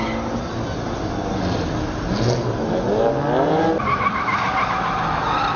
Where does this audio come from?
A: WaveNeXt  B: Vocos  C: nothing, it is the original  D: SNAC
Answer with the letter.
C